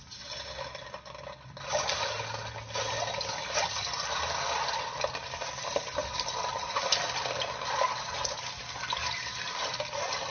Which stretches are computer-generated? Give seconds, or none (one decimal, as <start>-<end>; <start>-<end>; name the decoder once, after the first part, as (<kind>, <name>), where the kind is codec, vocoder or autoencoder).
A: none